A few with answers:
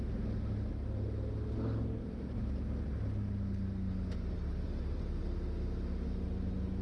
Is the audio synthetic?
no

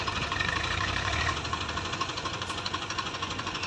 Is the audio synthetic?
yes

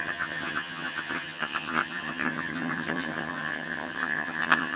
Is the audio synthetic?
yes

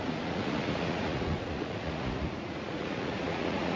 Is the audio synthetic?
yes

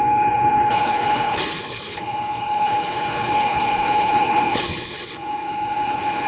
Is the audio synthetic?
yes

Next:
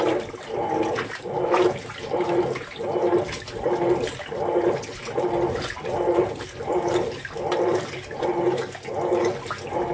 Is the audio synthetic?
no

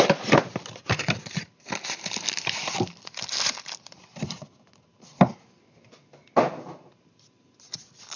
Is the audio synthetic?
yes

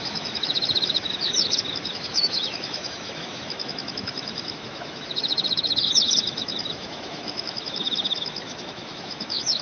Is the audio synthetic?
yes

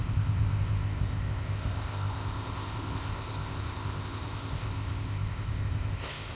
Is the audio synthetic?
yes